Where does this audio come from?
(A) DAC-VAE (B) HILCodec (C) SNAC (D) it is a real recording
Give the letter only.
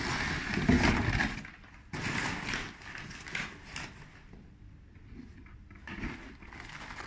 D